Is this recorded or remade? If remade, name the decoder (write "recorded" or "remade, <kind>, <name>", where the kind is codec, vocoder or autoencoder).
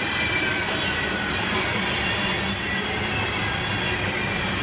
recorded